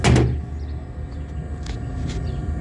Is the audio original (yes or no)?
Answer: yes